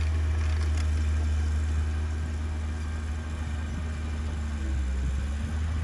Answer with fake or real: real